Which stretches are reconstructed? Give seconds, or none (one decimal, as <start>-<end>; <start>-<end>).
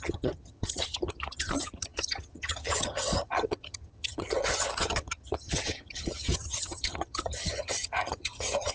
0.0-8.7